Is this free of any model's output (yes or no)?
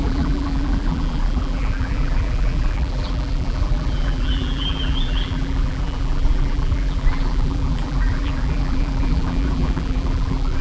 no